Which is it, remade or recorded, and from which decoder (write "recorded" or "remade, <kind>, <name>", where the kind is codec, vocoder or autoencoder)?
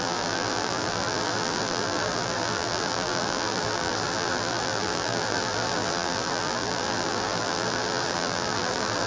remade, vocoder, BigVGAN v2